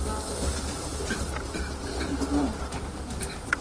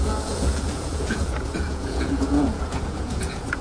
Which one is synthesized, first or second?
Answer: second